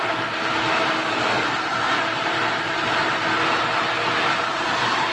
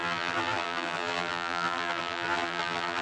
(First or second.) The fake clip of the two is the second